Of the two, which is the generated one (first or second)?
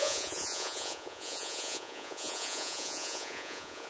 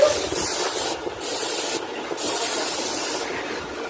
first